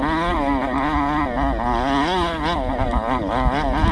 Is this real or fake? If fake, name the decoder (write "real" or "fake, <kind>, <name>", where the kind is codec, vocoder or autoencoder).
real